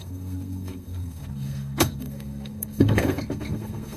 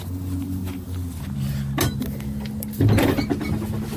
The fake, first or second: first